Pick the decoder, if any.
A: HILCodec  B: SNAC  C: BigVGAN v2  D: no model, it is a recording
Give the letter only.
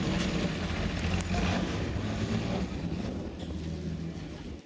D